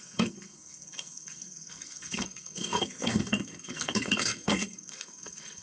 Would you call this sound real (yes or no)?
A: no